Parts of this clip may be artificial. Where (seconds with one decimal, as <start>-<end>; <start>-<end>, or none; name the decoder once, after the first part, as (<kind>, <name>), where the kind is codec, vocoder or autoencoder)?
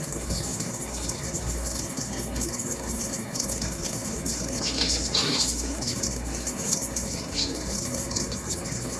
0.0-9.0 (codec, SNAC)